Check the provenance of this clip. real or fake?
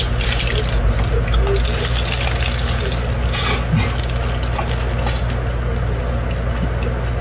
real